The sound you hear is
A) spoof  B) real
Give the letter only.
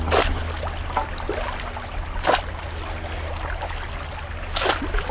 B